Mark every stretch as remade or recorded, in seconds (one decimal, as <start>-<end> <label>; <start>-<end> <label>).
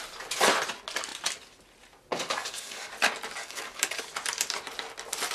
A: 0.0-2.1 recorded; 2.1-2.9 remade; 2.9-3.4 recorded; 3.4-4.0 remade; 4.0-5.3 recorded